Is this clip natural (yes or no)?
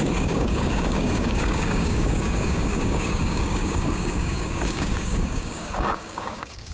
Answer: no